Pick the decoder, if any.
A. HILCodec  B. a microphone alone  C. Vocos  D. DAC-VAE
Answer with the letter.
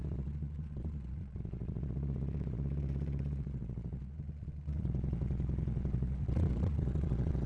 C